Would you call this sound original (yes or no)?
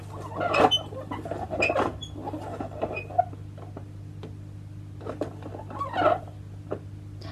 yes